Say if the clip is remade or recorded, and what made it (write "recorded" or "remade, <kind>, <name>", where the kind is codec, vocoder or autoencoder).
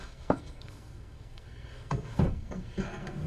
remade, codec, SNAC